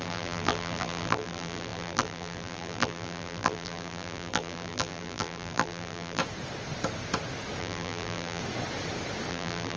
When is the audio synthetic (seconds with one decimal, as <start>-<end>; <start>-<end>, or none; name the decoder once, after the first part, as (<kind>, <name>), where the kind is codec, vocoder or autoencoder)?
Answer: 0.0-6.2 (vocoder, BigVGAN v2); 7.6-8.4; 9.3-9.8